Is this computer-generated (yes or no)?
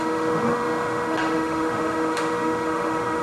yes